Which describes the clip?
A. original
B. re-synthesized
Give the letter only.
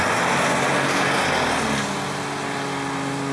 A